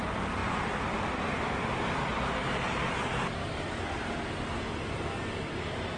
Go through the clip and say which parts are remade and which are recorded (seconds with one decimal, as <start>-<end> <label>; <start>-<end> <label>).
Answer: 0.0-6.0 recorded